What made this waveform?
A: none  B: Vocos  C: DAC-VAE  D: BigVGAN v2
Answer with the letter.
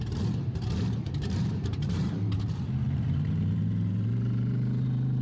D